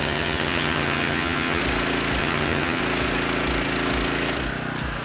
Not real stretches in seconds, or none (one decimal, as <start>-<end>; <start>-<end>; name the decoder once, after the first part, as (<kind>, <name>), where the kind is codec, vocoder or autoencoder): 0.0-1.6 (vocoder, HiFi-GAN); 2.2-2.8